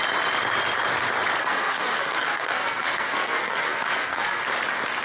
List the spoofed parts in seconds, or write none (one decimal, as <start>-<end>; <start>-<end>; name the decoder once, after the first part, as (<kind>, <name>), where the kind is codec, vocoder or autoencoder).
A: 1.4-4.4 (codec, SNAC)